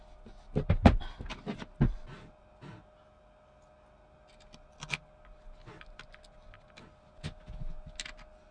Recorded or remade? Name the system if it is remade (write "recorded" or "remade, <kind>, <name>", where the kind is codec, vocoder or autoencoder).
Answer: recorded